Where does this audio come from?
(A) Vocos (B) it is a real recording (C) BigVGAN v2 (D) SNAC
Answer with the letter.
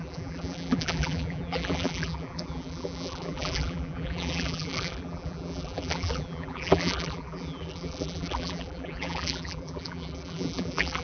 C